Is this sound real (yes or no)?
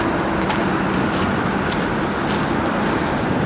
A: yes